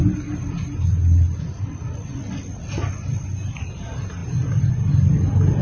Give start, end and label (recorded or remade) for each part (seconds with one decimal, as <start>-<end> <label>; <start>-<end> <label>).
0.0-5.6 recorded